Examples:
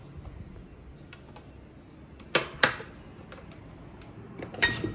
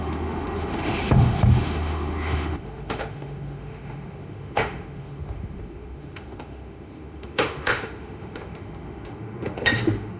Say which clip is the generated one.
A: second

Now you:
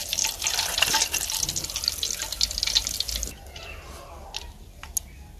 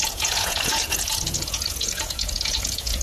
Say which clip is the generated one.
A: second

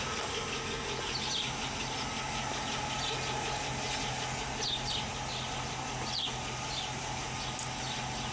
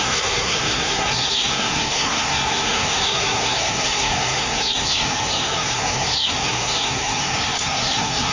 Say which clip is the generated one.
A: second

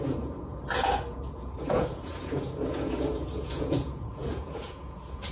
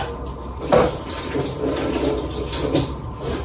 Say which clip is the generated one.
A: first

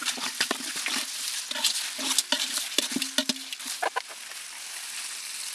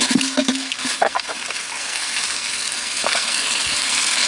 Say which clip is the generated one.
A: second